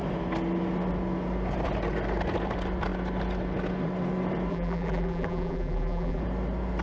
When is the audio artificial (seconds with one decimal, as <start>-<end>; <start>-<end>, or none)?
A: 4.5-6.2